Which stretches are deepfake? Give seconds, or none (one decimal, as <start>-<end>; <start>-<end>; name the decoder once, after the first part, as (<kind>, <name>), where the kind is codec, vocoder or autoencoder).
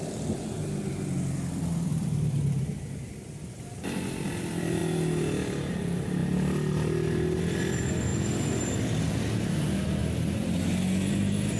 0.0-4.8 (vocoder, BigVGAN v2); 5.7-6.2; 7.4-8.1; 9.6-10.0; 11.1-11.6